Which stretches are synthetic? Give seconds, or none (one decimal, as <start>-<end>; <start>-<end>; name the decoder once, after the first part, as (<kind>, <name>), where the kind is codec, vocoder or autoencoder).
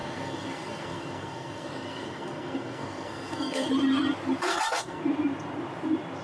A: 0.0-3.7 (codec, SNAC); 4.5-5.0